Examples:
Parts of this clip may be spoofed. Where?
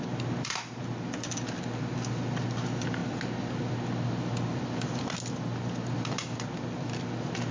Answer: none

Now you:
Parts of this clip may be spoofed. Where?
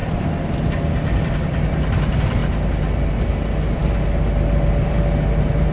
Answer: none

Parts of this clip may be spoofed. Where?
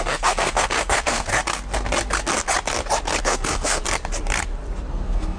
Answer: 0.0-1.3 (codec, SNAC); 3.2-3.8; 4.9-5.4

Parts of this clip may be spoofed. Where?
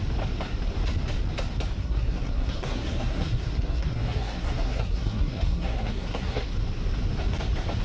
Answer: 1.8-6.5 (codec, SNAC)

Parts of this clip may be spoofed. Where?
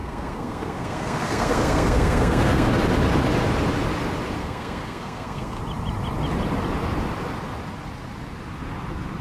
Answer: 0.0-2.7 (codec, SNAC); 4.4-5.6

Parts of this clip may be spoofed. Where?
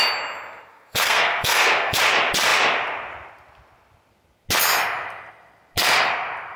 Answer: 0.7-2.0 (codec, SNAC)